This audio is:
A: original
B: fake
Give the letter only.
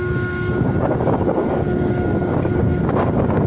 B